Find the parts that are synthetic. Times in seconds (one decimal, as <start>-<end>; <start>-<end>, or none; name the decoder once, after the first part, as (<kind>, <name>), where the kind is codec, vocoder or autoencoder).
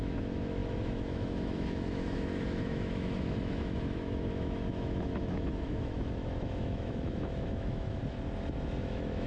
0.0-8.0 (autoencoder, DAC-VAE); 8.8-9.3